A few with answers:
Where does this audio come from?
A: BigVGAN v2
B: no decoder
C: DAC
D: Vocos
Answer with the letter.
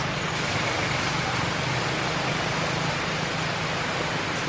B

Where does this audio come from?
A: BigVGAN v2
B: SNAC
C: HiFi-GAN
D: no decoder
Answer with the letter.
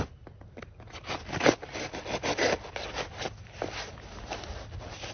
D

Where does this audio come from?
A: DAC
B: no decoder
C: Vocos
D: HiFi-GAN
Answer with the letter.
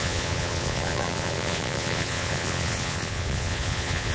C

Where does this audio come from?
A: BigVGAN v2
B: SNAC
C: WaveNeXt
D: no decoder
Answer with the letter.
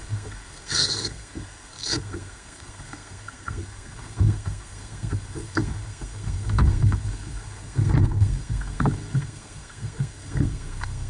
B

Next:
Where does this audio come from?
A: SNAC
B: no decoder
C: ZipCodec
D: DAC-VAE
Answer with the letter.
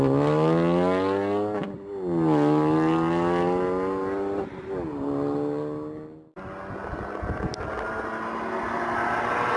B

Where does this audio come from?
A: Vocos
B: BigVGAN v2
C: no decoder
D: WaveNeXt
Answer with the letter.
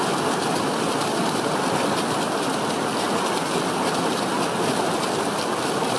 C